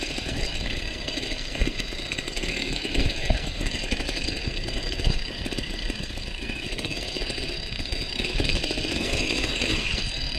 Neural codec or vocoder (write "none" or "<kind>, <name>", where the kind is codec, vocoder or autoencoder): codec, SNAC